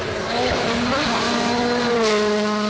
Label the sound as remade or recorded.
recorded